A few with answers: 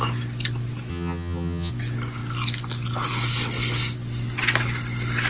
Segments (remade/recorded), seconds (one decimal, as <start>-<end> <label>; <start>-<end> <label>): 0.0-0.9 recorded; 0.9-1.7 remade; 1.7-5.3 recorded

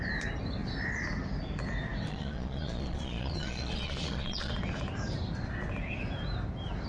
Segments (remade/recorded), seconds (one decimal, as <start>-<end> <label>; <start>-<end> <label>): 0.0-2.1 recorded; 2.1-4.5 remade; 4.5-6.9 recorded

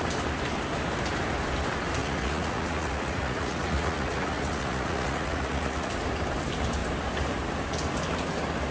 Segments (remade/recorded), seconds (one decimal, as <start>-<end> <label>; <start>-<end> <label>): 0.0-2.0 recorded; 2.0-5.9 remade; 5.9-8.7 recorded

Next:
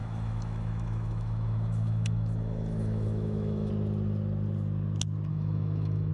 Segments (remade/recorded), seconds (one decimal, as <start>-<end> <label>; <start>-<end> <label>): 0.0-3.7 remade; 3.7-5.3 recorded; 5.3-6.1 remade

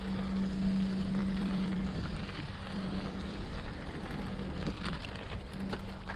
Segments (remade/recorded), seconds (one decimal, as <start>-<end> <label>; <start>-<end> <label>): 0.0-1.2 recorded; 1.2-4.9 remade; 4.9-6.2 recorded

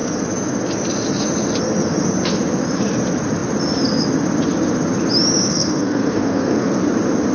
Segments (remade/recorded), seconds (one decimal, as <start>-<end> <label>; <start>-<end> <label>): 0.0-5.5 recorded; 5.5-6.8 remade; 6.8-7.3 recorded